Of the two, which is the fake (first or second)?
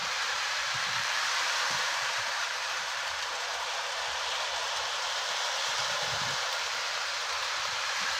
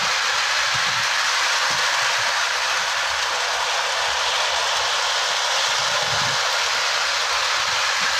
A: first